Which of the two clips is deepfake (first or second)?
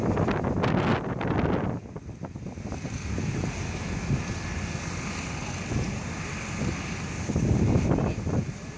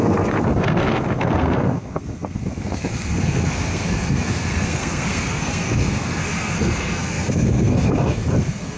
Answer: second